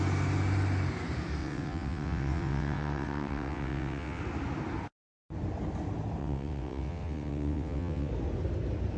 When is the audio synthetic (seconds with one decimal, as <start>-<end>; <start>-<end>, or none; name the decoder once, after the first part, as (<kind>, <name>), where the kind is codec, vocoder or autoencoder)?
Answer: 1.4-4.2 (vocoder, WaveNeXt); 6.2-8.1